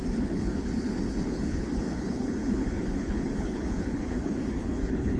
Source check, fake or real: fake